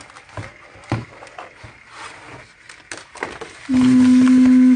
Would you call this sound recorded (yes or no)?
yes